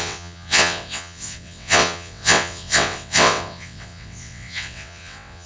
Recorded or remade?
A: remade